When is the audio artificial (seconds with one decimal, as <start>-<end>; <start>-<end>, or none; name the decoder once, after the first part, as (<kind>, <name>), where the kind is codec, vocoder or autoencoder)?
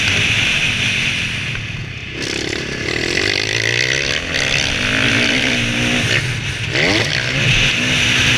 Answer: none